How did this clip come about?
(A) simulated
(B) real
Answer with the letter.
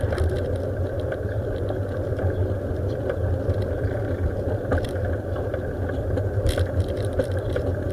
A